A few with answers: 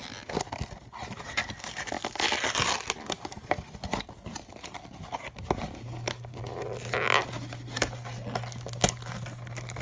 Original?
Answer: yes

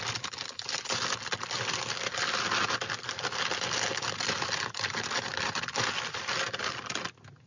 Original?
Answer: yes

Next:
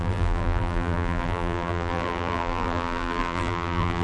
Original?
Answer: no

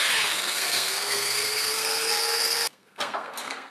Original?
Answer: no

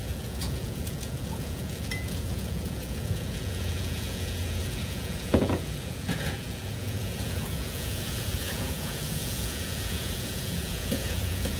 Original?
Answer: no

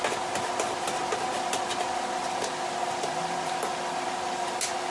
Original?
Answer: yes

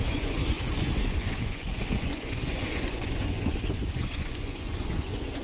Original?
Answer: no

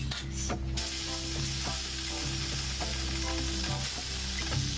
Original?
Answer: yes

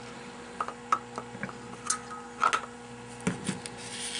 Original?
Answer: yes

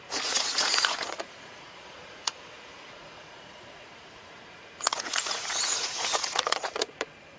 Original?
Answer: no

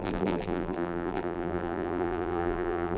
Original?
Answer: no